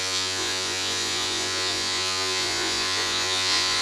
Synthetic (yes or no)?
yes